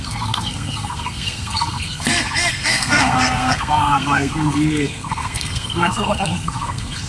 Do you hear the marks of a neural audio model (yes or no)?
yes